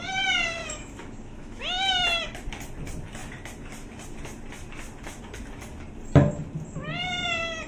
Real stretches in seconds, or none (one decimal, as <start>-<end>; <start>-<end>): 0.0-0.6; 1.6-7.7